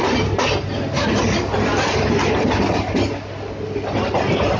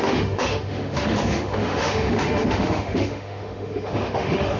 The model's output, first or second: second